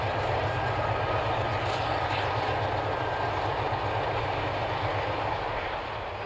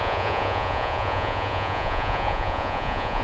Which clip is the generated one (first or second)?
second